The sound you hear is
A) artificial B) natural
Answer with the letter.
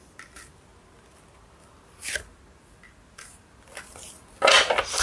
B